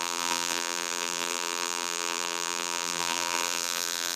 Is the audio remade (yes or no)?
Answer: yes